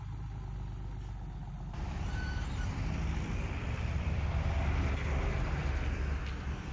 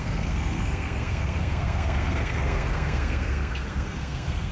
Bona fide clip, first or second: first